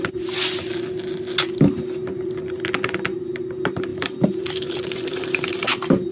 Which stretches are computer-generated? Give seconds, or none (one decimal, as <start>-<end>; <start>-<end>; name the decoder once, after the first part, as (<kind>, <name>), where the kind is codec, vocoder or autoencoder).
3.9-6.1 (vocoder, BigVGAN v2)